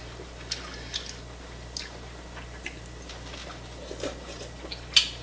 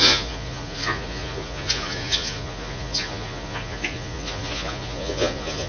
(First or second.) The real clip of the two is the first